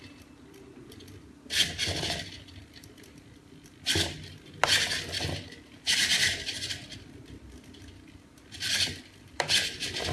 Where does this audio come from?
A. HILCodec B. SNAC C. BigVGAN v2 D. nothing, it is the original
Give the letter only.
D